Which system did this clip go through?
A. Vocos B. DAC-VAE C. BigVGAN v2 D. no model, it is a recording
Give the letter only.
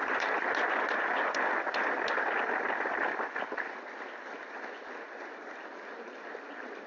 D